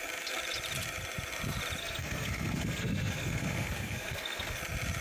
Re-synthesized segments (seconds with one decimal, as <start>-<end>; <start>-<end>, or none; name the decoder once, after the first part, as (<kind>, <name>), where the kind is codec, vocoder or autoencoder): 1.8-4.6 (codec, SNAC)